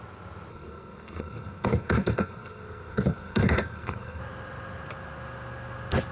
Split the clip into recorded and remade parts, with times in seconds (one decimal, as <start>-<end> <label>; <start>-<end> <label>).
0.0-0.5 recorded; 0.5-4.2 remade; 4.2-6.1 recorded